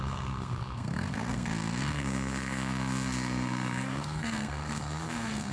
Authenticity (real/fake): fake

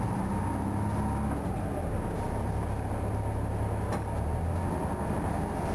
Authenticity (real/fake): real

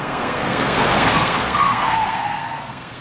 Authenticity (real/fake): fake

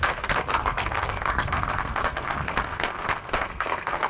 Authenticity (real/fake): fake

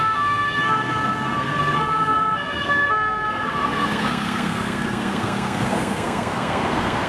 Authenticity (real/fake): fake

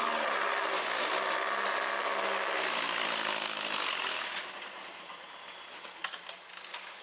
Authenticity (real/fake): real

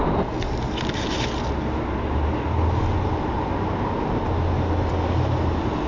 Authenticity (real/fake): real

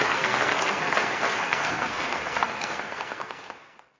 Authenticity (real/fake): fake